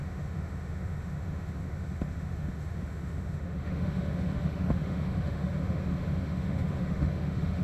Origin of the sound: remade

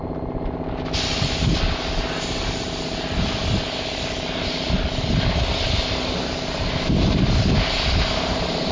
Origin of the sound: recorded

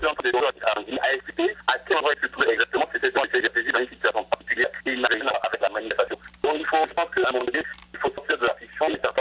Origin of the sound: recorded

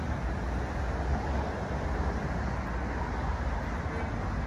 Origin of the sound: recorded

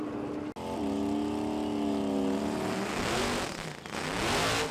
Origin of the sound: recorded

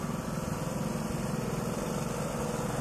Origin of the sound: recorded